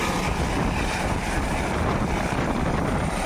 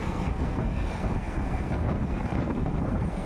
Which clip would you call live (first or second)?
first